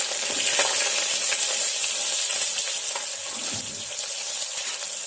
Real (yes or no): yes